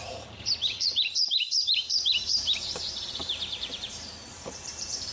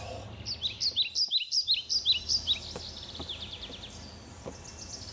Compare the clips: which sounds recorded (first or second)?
second